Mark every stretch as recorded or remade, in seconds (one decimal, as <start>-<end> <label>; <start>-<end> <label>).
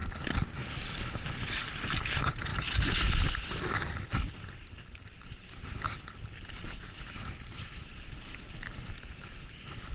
0.0-9.9 recorded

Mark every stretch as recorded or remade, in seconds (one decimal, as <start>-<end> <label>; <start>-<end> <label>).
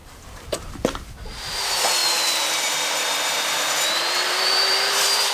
0.0-5.3 remade